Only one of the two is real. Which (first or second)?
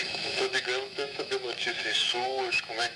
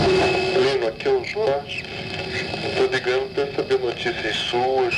second